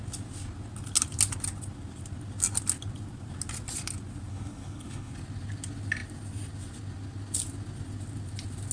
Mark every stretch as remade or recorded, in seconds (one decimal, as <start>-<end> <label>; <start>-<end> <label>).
0.0-4.3 recorded; 4.3-5.1 remade; 5.1-8.7 recorded